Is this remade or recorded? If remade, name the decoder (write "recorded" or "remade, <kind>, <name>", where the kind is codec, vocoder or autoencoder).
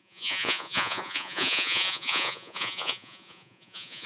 remade, vocoder, Vocos